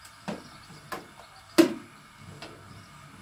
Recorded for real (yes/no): yes